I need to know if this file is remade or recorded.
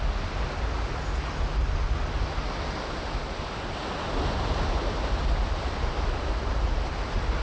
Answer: recorded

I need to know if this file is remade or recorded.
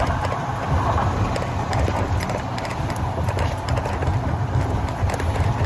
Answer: remade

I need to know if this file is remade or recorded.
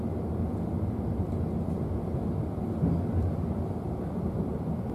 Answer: remade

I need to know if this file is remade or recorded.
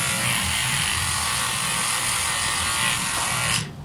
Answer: recorded